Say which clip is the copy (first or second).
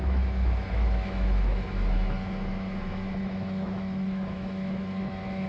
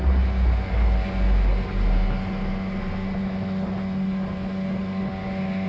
first